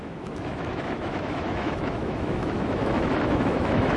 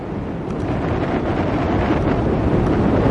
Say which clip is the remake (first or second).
first